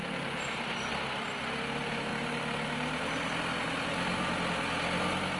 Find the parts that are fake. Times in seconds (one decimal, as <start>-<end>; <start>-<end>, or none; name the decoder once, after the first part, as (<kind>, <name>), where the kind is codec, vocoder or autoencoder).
none